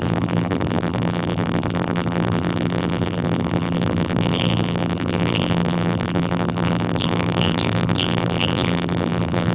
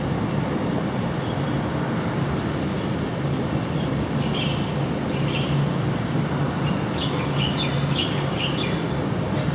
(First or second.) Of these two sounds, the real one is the second